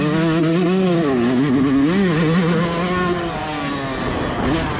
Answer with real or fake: real